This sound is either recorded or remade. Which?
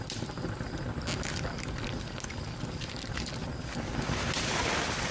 recorded